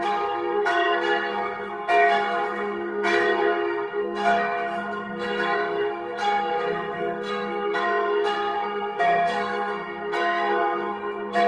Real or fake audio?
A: fake